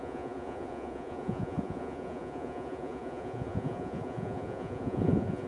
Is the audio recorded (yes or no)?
no